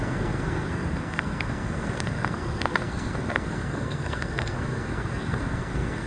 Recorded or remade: remade